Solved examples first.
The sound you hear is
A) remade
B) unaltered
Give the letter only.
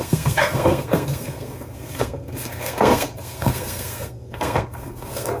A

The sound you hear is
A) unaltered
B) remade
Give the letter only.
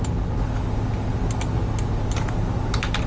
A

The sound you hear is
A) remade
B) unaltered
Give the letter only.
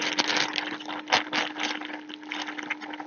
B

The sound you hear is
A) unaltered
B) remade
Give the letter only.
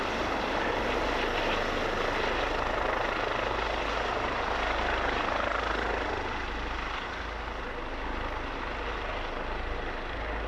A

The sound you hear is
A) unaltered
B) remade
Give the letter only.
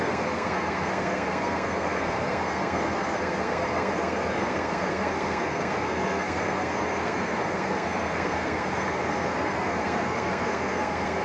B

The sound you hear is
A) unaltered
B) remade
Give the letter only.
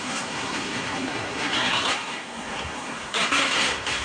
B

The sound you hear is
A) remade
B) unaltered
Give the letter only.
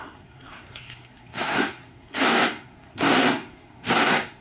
A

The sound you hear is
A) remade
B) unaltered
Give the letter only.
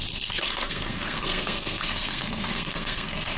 A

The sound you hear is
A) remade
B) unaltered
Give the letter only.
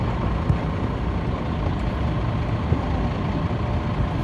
B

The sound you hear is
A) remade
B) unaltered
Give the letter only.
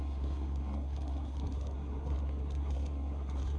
A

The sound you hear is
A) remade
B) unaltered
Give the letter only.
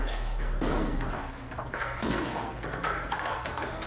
A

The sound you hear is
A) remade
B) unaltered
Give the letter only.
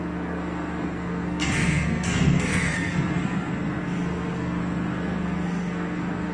A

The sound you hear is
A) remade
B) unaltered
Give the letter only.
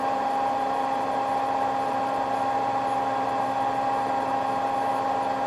B